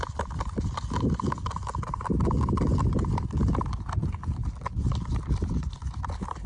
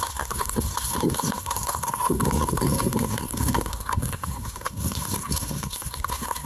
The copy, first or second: second